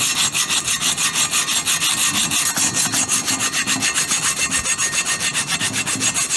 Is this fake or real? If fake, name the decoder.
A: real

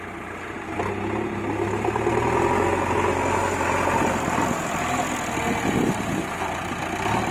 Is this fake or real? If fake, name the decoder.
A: real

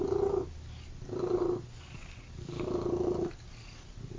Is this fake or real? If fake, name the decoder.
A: real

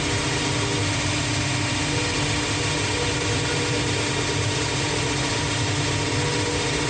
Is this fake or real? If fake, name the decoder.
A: real